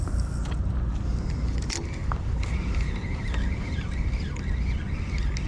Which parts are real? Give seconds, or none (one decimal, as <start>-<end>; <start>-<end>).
0.0-2.0; 4.4-5.5